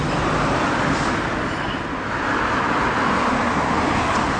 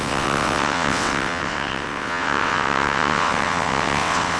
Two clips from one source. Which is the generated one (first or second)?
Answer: second